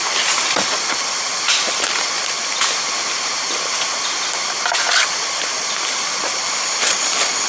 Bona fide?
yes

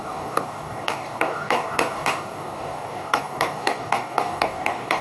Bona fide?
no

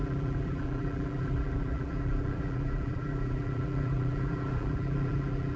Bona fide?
no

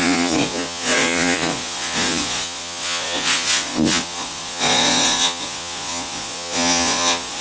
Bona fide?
no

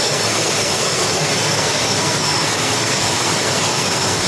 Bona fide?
no